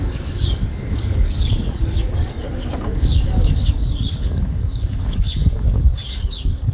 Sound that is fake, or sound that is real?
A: fake